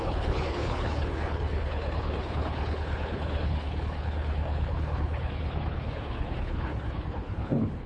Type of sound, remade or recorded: remade